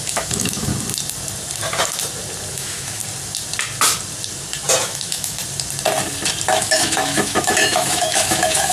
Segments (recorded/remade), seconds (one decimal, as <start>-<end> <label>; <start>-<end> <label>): 0.0-0.7 remade; 0.7-2.5 recorded; 2.5-3.0 remade; 3.0-4.8 recorded; 4.8-5.4 remade; 5.4-6.5 recorded; 6.5-8.7 remade